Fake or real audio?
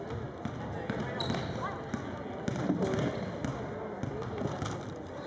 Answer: real